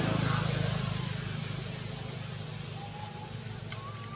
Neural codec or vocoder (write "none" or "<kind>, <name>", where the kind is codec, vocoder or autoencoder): none